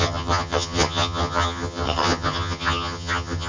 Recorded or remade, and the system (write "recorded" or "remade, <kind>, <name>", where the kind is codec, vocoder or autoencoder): remade, vocoder, HiFi-GAN